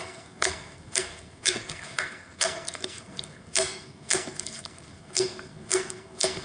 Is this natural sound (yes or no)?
no